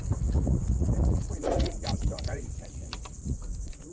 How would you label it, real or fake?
fake